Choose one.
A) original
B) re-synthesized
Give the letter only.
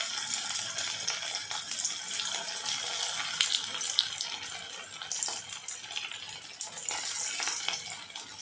A